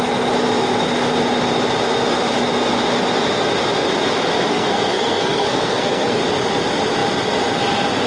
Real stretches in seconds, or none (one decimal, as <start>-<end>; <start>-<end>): 0.0-4.5; 6.2-8.1